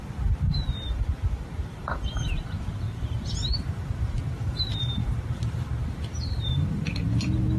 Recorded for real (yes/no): no